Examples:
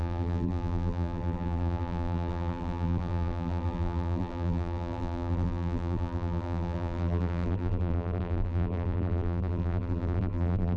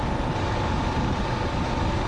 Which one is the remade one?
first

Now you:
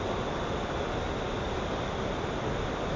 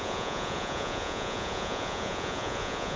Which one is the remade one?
second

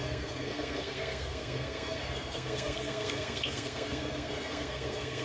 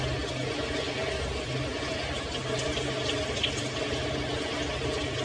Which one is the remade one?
first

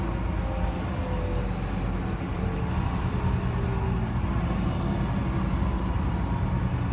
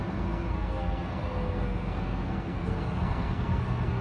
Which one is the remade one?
second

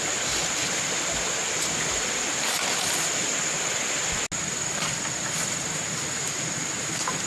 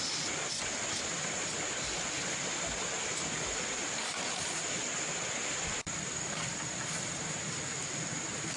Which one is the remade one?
second